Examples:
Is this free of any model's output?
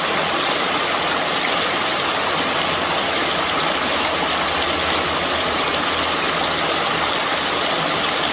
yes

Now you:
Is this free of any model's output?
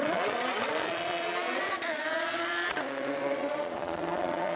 no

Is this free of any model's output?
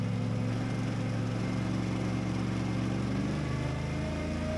yes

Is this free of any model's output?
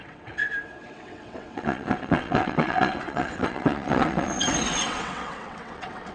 no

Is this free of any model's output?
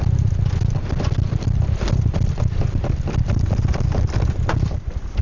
no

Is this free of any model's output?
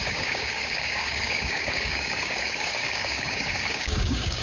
no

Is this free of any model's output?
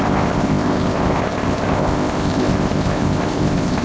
no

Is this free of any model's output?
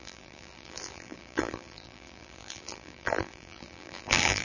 no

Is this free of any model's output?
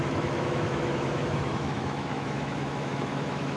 no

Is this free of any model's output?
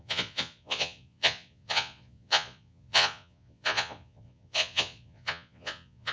no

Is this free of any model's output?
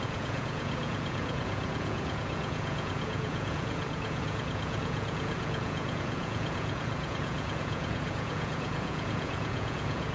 no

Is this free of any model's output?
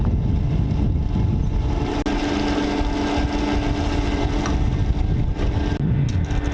yes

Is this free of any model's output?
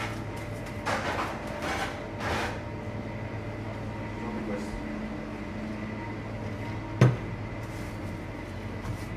yes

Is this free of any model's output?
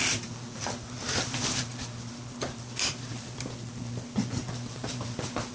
yes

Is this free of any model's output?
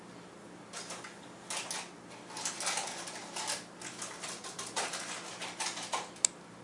yes